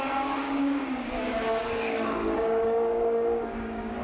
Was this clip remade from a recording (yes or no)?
yes